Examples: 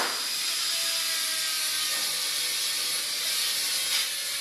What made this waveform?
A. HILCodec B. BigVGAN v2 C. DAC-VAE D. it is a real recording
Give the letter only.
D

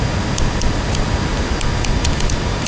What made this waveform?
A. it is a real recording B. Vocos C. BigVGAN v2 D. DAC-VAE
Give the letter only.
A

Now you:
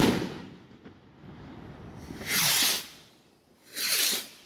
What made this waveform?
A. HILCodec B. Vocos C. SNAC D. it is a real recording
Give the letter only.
D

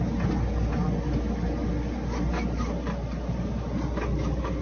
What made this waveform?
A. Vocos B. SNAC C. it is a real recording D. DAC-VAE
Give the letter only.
C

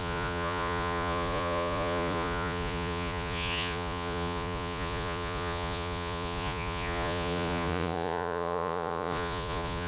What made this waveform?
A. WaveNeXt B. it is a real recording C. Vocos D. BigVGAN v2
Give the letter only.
C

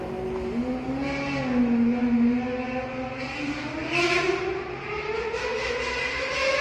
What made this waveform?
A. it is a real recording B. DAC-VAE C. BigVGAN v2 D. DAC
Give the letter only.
A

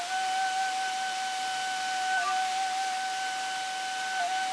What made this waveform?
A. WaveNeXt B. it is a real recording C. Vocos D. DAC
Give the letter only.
B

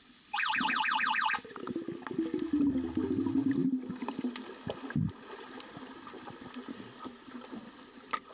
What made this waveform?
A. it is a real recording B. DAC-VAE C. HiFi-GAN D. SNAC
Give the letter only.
A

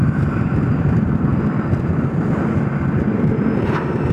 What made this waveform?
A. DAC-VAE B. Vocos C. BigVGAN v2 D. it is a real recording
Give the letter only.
D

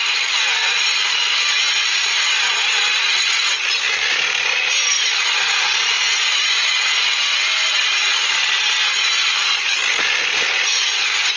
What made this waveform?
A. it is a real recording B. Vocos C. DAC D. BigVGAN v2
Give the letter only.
A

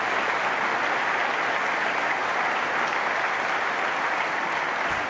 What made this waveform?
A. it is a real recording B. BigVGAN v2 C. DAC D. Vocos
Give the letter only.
A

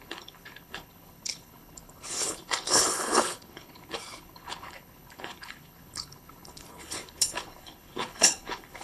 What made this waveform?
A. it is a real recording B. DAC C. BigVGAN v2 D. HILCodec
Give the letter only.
D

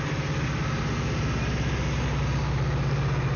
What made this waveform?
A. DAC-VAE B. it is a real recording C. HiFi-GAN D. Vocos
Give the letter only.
B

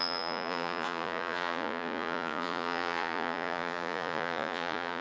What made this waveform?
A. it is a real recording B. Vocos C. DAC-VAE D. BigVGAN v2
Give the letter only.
B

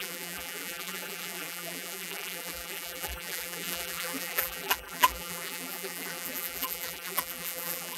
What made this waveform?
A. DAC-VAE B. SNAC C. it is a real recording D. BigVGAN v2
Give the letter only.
D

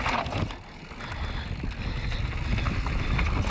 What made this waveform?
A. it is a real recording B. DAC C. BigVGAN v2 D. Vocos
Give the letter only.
A